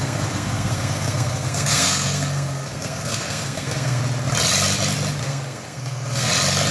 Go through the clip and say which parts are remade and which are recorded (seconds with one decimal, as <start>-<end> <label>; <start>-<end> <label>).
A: 0.0-4.0 remade; 4.0-5.2 recorded; 5.2-6.3 remade; 6.3-6.7 recorded